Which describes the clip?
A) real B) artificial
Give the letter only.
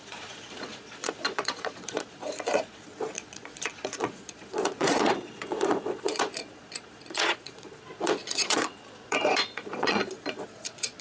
B